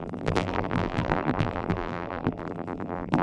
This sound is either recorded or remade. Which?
remade